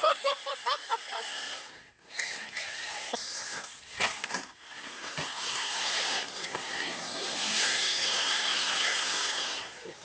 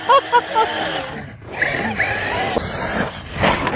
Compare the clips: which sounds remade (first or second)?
first